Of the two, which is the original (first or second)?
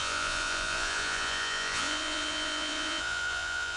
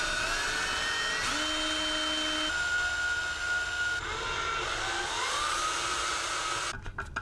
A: second